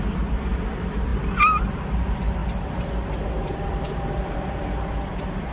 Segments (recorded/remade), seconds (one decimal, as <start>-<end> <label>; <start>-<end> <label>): 0.0-5.5 recorded